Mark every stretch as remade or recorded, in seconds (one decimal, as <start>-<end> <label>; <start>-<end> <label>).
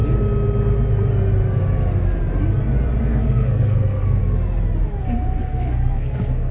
0.0-3.0 recorded; 3.0-4.2 remade; 4.2-5.4 recorded; 5.4-6.5 remade